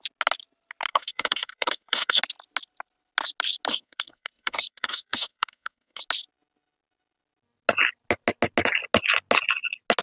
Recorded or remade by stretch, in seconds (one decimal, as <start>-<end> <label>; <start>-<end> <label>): 0.0-0.9 recorded; 0.9-2.2 remade; 2.2-3.7 recorded; 3.7-6.0 remade; 6.0-10.0 recorded